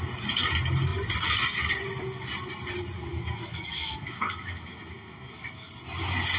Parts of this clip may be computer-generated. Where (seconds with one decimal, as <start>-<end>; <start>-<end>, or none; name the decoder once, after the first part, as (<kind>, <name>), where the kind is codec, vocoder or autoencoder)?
3.1-5.7 (autoencoder, DAC-VAE)